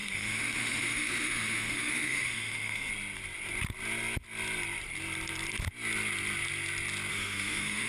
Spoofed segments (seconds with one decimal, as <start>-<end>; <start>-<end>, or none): 0.0-2.9; 7.1-7.9